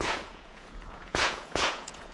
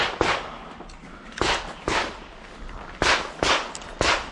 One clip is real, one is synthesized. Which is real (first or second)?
second